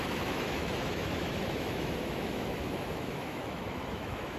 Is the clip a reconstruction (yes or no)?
yes